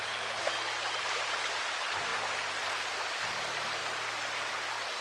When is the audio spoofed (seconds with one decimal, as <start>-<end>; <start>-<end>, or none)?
none